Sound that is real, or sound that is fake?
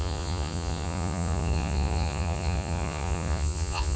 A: fake